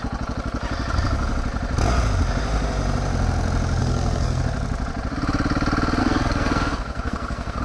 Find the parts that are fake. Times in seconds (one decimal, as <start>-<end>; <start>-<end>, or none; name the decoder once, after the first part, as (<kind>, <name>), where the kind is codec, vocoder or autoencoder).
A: 3.8-4.4 (codec, SNAC); 6.0-7.6